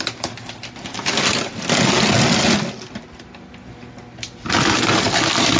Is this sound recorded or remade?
recorded